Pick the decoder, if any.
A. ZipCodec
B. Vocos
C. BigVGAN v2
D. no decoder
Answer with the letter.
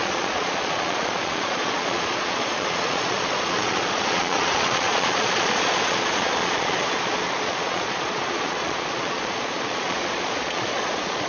B